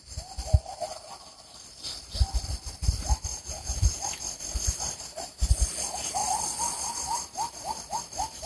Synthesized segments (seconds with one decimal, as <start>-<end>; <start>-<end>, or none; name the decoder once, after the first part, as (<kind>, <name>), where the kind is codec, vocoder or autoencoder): 3.3-4.0 (vocoder, Vocos)